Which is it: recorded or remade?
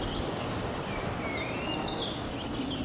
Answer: recorded